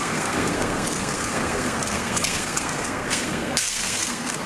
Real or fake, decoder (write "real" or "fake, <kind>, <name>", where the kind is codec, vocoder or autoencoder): fake, codec, SNAC